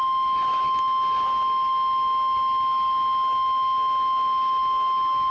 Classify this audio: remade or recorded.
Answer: recorded